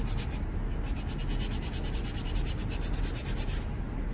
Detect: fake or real real